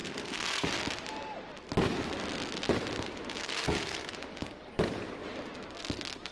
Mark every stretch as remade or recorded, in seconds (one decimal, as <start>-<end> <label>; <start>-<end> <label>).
0.0-0.7 remade; 0.7-3.4 recorded; 3.4-4.1 remade; 4.1-6.3 recorded

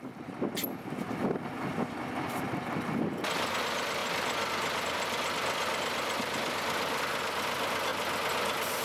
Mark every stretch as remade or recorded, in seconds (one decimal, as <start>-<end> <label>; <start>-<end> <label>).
0.0-8.8 recorded

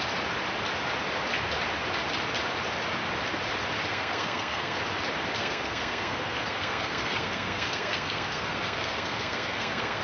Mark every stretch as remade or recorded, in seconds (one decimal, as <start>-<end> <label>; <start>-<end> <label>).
0.0-3.9 recorded; 3.9-4.8 remade; 4.8-5.4 recorded; 5.4-10.0 remade

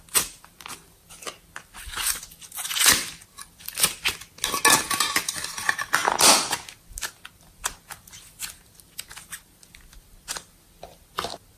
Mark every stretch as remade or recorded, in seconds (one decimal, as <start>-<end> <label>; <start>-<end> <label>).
0.0-11.6 recorded